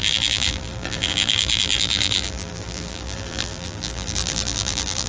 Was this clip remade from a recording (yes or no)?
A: yes